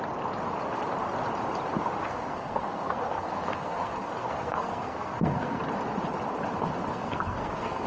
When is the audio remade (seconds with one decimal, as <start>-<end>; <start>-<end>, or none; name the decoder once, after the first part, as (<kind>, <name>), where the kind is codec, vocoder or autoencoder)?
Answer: 2.0-5.6 (codec, SNAC); 6.9-7.9